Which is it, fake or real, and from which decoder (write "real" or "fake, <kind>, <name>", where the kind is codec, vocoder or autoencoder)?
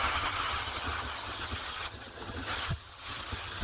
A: fake, vocoder, HiFi-GAN